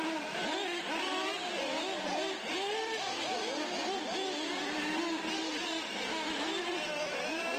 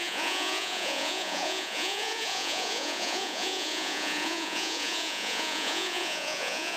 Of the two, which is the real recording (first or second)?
first